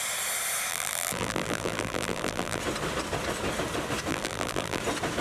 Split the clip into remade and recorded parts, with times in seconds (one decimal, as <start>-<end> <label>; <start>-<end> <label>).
0.0-0.7 recorded; 0.7-2.6 remade; 2.6-4.1 recorded; 4.1-4.8 remade; 4.8-5.2 recorded